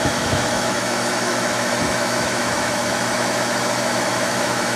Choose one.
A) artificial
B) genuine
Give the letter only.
A